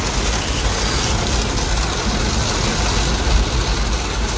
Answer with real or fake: real